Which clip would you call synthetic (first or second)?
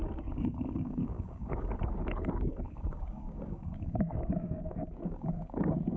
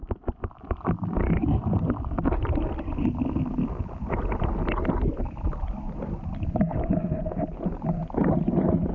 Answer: first